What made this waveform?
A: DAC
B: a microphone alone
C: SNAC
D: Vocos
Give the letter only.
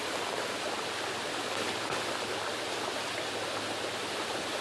B